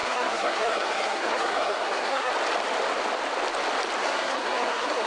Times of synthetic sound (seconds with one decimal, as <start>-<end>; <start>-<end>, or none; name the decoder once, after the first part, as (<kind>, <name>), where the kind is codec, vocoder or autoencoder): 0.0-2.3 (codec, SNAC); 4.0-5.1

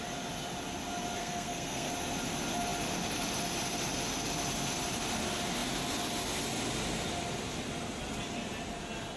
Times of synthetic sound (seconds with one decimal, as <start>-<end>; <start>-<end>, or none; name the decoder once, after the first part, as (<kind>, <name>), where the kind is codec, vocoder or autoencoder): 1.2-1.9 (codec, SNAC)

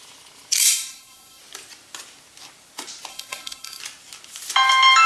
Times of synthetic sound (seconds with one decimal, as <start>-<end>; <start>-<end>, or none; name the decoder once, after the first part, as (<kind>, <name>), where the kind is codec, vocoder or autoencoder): 0.6-1.4 (codec, SNAC); 3.1-3.8